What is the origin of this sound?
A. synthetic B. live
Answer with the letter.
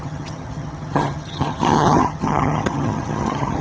A